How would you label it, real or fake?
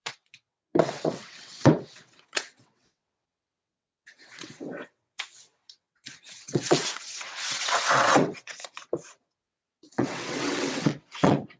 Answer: fake